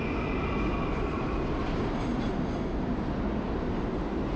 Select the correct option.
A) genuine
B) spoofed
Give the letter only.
A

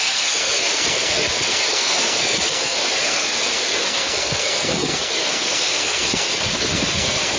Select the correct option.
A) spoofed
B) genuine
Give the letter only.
A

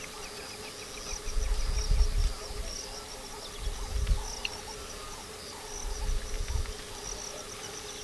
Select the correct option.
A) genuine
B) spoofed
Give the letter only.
A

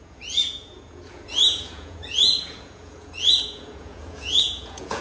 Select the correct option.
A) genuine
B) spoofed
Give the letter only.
B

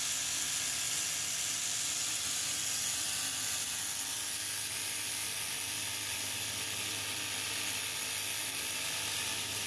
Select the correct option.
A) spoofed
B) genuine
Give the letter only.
B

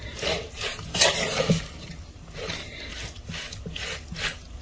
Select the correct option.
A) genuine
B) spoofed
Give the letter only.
A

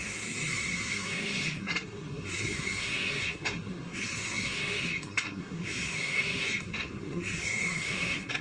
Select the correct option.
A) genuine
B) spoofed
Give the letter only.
B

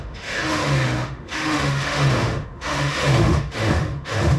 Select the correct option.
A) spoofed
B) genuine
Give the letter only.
A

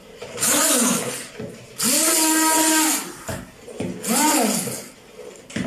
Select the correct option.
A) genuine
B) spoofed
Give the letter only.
A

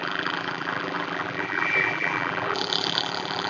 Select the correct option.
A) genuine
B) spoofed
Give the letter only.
B